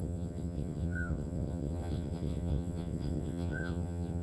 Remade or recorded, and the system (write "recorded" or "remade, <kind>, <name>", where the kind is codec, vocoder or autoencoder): remade, vocoder, WaveNeXt